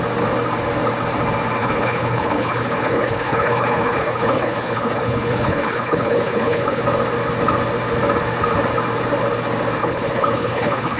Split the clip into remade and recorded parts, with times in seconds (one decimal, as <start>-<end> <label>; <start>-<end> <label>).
0.0-1.6 recorded; 1.6-6.8 remade; 6.8-9.8 recorded; 9.8-11.0 remade